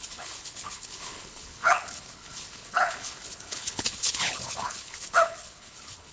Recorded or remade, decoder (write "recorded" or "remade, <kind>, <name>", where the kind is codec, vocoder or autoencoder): remade, codec, HILCodec